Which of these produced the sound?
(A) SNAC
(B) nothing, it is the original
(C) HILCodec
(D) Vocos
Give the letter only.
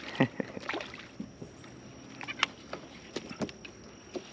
B